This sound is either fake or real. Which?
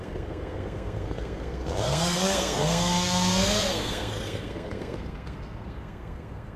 fake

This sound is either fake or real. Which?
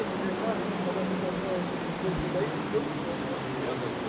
real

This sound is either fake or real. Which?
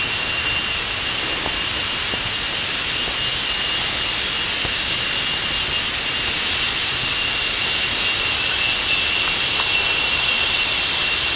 real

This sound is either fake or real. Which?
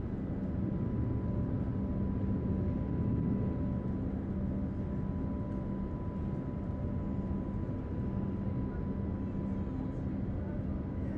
real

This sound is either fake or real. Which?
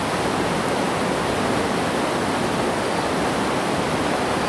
real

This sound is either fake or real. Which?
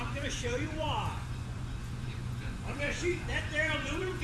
fake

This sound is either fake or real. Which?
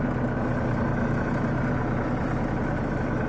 real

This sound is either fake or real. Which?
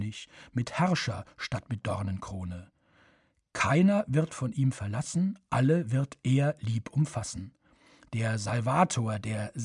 real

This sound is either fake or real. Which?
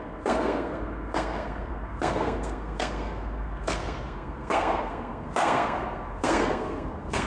fake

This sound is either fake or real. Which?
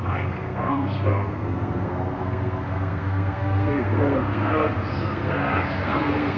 fake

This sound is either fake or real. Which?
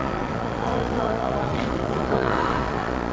fake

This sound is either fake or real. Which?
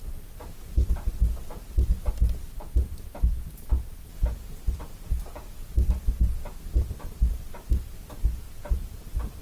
fake